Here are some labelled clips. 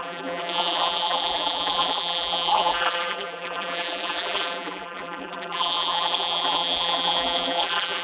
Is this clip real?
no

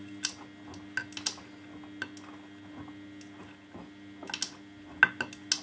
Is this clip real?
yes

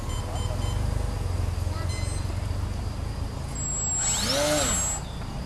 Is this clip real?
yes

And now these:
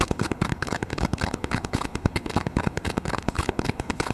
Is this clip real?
no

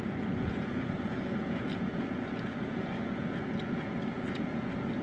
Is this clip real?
no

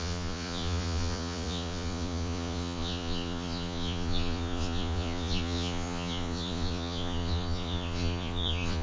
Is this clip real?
no